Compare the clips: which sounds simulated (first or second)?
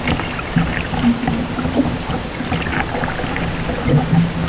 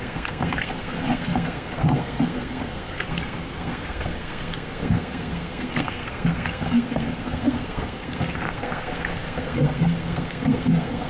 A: second